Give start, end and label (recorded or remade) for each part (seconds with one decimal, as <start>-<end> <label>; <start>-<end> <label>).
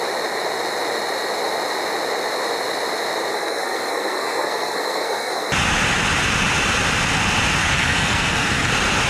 0.0-3.3 recorded; 3.3-5.5 remade; 5.5-7.6 recorded; 7.6-8.7 remade; 8.7-9.1 recorded